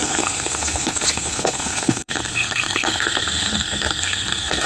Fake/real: fake